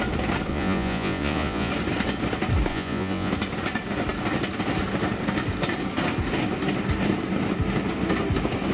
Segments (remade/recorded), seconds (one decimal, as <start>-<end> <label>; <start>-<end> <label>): 0.0-0.5 recorded; 0.5-1.7 remade; 1.7-2.7 recorded; 2.7-3.3 remade; 3.3-8.7 recorded